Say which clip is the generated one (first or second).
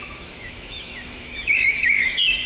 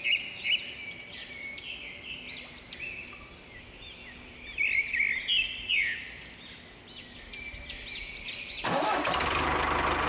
first